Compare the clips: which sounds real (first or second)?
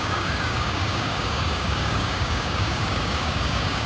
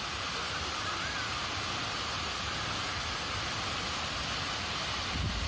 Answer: second